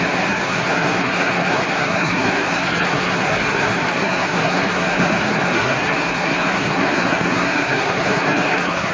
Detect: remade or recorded remade